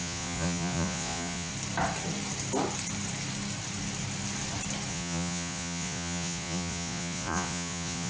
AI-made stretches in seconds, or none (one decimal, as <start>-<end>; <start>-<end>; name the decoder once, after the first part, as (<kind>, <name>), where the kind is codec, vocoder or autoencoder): 0.0-1.5 (vocoder, Vocos); 4.9-8.1